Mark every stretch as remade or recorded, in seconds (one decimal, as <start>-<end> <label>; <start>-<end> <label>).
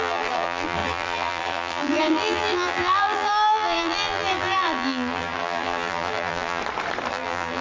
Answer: 0.0-6.6 remade; 6.6-7.1 recorded; 7.1-7.6 remade